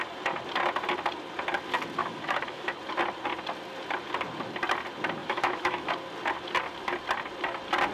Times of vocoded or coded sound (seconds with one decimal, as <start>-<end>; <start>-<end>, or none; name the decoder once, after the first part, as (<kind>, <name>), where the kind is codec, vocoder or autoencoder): 2.0-2.7 (autoencoder, DAC-VAE); 5.2-5.9